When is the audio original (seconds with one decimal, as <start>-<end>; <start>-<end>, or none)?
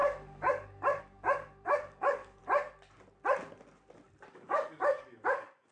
2.4-4.3